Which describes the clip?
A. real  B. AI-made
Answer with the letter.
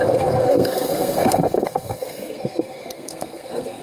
B